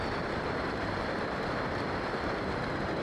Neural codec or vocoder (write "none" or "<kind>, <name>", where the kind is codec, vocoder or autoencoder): vocoder, BigVGAN v2